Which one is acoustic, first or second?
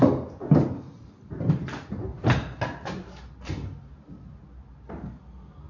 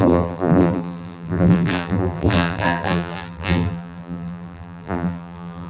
first